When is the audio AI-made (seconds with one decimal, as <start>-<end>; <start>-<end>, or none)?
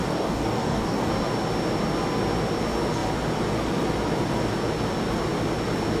0.0-1.1